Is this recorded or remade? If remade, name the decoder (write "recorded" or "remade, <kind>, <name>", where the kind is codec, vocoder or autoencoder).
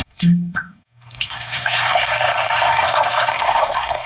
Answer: remade, codec, SNAC